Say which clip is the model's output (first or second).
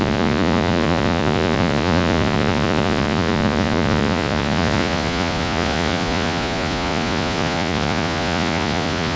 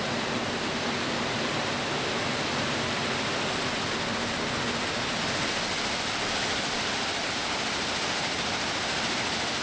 first